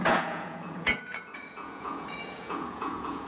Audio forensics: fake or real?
fake